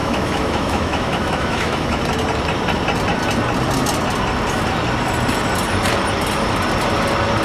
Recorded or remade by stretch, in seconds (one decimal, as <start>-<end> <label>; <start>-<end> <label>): 0.0-2.0 remade; 2.0-7.4 recorded